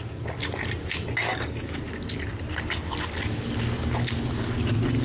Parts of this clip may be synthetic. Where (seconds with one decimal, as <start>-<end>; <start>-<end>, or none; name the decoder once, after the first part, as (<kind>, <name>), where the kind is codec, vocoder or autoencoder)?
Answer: 1.3-1.8 (codec, DAC)